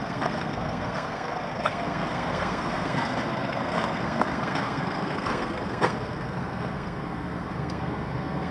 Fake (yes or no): yes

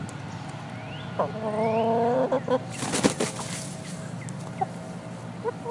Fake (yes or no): no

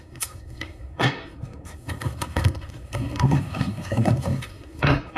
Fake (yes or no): yes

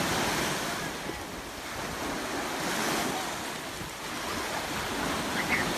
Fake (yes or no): no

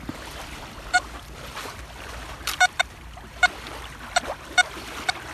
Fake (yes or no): yes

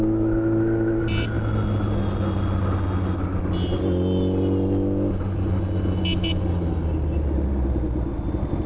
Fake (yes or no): no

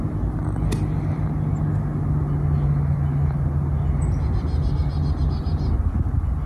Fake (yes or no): no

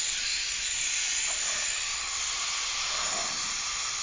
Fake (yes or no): no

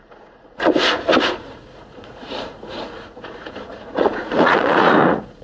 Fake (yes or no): yes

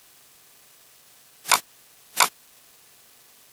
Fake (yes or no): no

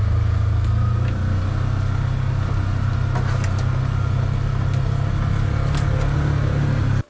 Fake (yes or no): no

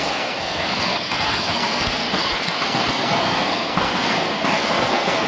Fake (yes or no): yes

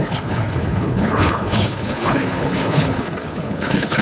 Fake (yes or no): yes